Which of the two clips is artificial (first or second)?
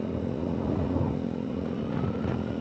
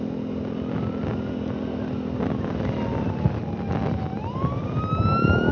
first